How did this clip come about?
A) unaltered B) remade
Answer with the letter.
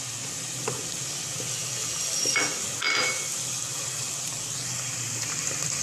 A